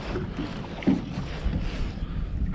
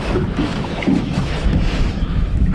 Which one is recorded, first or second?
first